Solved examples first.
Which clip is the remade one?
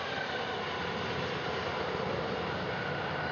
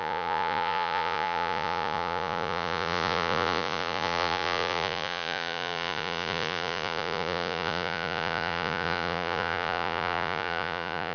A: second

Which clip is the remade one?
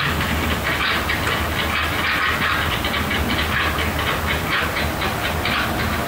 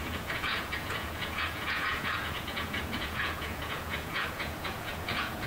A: second